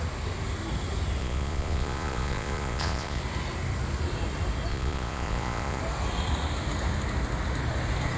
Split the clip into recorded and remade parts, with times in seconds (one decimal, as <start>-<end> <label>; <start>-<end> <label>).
0.0-1.2 recorded; 1.2-3.2 remade; 3.2-4.7 recorded; 4.7-5.8 remade; 5.8-8.2 recorded